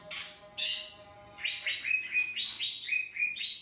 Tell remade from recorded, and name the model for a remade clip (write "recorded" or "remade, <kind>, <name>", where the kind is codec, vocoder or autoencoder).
recorded